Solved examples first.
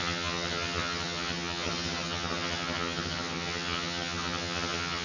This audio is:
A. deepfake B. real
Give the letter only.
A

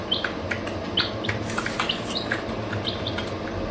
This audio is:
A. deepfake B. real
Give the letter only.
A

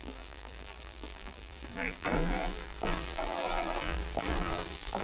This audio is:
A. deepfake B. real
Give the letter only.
A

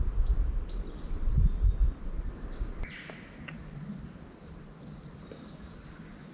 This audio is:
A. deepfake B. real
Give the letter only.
B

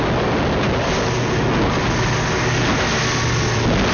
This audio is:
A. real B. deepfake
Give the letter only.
A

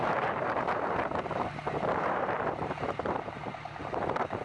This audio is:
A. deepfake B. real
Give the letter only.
A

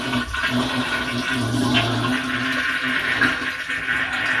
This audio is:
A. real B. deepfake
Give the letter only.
A